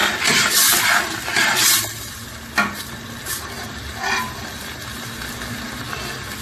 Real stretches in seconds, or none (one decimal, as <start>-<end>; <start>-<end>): 0.6-6.4